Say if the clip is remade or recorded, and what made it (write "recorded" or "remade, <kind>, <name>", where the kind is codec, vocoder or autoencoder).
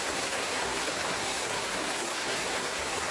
remade, codec, SNAC